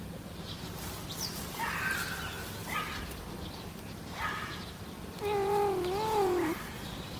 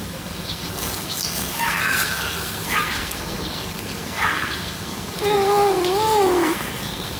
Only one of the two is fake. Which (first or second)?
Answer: second